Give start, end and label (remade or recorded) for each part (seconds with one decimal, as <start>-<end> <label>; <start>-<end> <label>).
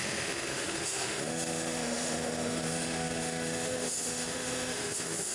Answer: 0.0-5.3 remade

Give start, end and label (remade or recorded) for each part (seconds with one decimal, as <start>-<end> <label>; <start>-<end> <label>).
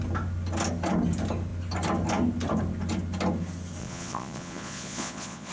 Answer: 0.0-3.8 recorded; 3.8-5.5 remade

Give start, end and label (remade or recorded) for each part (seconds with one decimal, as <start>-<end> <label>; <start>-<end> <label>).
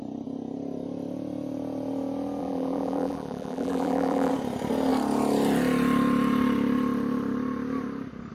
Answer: 0.0-2.4 recorded; 2.4-4.3 remade; 4.3-8.3 recorded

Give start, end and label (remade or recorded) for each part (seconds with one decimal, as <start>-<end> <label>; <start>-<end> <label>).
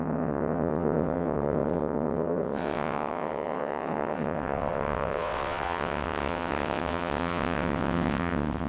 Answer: 0.0-8.7 remade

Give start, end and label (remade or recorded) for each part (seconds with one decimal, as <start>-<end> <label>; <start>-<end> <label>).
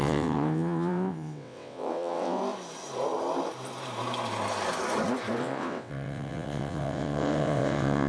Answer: 0.0-2.4 remade; 2.4-5.4 recorded; 5.4-8.1 remade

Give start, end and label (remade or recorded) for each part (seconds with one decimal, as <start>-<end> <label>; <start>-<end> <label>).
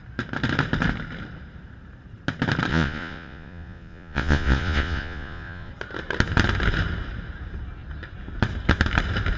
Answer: 0.0-2.7 recorded; 2.7-5.7 remade; 5.7-9.4 recorded